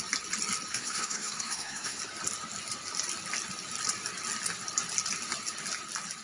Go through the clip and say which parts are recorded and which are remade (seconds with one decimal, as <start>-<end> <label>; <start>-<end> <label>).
0.0-0.7 recorded; 0.7-2.0 remade; 2.0-6.2 recorded